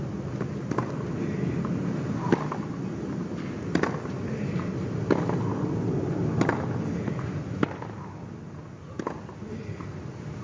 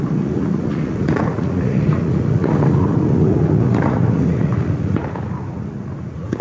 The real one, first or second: first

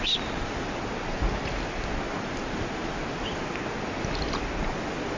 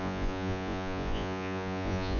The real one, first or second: first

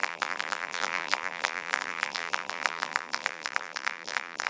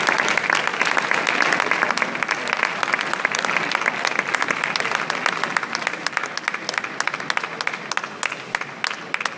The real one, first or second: second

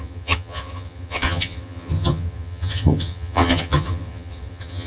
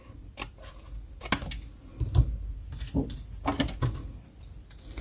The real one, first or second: second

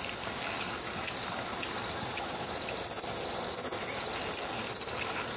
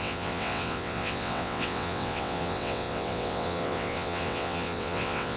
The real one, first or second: first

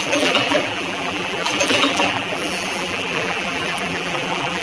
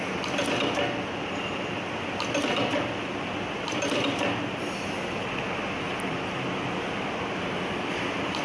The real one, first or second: second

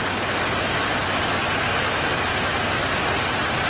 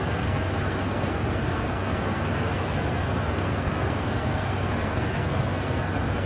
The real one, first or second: first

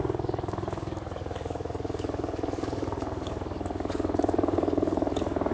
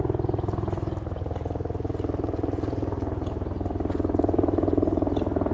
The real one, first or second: second